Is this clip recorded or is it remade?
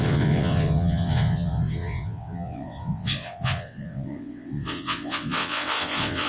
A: remade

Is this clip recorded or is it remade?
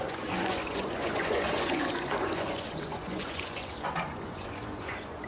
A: remade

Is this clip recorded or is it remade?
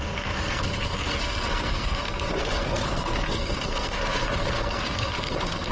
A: remade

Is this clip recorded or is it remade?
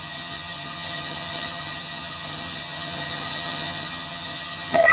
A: remade